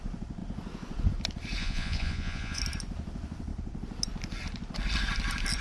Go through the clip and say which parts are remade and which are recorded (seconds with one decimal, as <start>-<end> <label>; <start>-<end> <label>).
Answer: 0.0-1.6 recorded; 1.6-2.6 remade; 2.6-5.6 recorded